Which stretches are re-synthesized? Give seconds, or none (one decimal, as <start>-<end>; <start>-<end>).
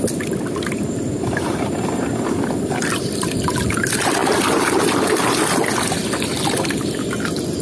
none